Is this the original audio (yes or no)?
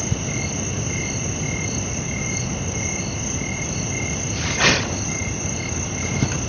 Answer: yes